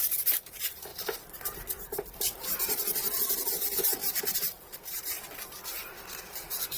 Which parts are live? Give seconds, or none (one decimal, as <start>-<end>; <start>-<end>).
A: 4.0-4.5